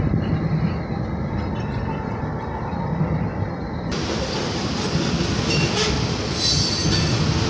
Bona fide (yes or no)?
yes